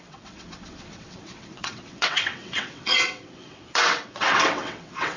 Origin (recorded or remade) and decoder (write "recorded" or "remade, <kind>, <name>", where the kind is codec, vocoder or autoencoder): remade, vocoder, WaveNeXt